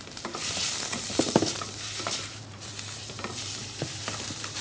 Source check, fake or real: fake